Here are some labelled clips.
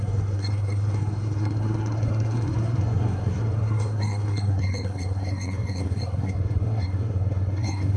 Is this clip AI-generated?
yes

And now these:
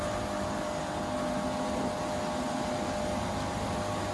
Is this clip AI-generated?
no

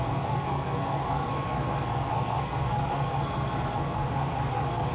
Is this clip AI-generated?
yes